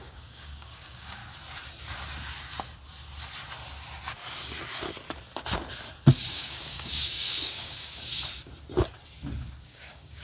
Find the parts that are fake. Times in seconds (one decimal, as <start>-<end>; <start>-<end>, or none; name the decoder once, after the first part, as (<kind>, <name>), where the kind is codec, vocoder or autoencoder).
0.0-1.2 (codec, DAC); 6.3-8.1; 9.6-10.2